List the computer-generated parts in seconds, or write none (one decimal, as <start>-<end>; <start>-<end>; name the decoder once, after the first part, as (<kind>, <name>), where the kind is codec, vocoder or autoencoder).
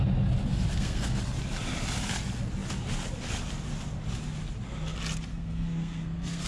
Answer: 0.7-1.2 (codec, SNAC); 5.3-6.5